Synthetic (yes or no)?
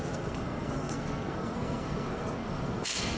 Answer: yes